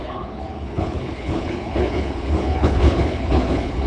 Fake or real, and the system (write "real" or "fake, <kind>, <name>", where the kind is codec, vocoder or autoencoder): fake, codec, HILCodec